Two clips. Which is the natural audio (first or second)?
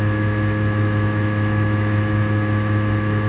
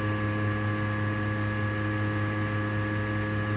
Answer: second